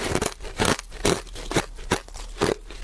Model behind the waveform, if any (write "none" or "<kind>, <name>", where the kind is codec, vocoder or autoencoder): none